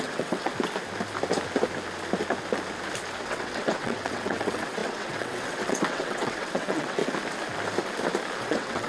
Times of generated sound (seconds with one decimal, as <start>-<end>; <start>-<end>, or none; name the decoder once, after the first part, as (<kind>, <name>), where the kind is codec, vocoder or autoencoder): 0.0-0.5 (vocoder, WaveNeXt); 3.2-7.0; 8.4-8.9